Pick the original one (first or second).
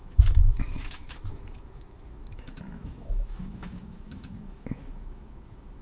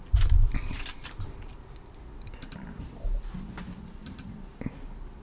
second